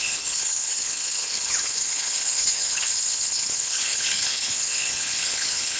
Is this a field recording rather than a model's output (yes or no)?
no